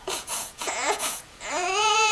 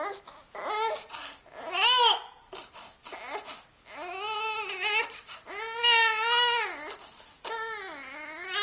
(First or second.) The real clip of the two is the second